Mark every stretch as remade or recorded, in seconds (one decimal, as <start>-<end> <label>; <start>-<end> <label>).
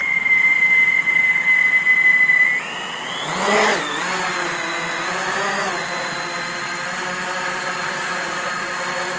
0.0-7.8 recorded; 7.8-8.7 remade; 8.7-9.2 recorded